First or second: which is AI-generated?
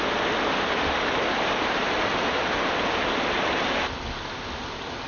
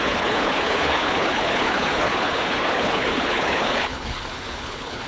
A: second